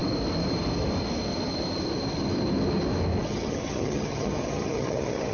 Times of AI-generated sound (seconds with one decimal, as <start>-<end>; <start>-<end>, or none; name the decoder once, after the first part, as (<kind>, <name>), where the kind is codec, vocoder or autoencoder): 3.2-5.3 (vocoder, HiFi-GAN)